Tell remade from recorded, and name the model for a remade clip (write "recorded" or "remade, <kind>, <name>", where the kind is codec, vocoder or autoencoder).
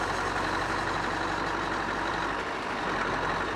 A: recorded